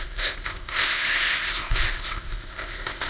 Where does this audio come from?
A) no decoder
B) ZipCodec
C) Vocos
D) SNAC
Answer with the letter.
B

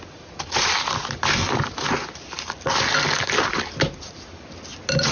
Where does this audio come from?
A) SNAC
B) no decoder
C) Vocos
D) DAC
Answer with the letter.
B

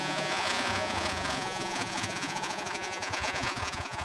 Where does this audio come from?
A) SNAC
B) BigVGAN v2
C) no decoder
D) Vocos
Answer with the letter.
D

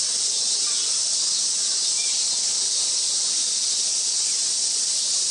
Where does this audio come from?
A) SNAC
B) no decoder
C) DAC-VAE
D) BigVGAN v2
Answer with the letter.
B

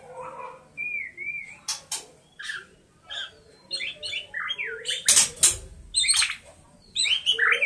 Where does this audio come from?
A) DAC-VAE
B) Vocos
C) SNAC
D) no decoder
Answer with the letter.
D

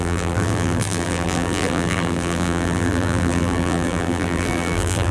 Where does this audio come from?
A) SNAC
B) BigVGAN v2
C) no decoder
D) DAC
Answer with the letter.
B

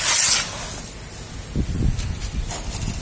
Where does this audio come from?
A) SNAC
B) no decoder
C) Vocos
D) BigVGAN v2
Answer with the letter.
B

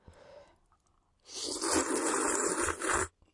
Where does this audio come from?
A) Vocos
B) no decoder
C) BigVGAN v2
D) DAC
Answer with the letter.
B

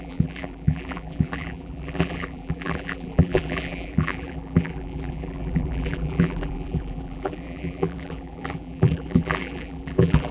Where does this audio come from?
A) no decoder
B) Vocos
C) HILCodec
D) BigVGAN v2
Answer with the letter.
D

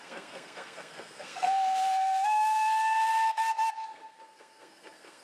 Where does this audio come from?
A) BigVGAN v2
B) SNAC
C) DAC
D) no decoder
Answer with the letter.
B